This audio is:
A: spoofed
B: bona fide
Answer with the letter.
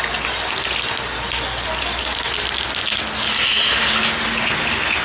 B